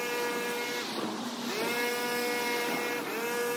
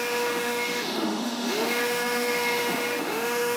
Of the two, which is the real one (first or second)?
first